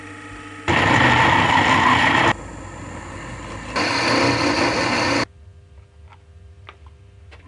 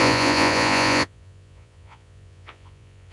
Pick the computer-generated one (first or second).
second